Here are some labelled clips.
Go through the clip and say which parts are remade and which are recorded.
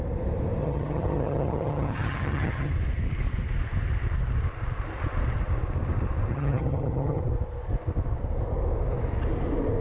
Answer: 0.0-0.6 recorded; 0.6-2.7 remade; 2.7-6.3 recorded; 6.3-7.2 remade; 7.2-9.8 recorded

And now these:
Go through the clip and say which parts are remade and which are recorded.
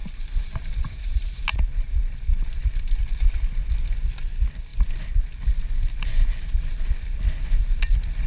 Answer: 0.0-8.3 recorded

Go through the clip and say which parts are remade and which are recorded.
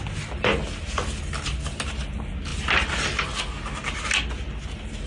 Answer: 0.0-5.1 recorded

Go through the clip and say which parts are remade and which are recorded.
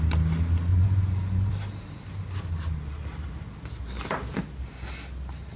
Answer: 0.0-0.7 recorded; 0.7-1.5 remade; 1.5-5.6 recorded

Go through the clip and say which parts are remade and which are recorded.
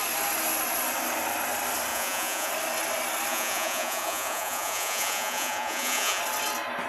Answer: 0.0-1.9 recorded; 1.9-2.5 remade; 2.5-3.3 recorded; 3.3-6.2 remade; 6.2-6.9 recorded